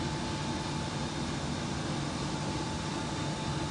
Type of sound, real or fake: real